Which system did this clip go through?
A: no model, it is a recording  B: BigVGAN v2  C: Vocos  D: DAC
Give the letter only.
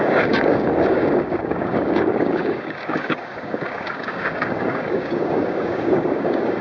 D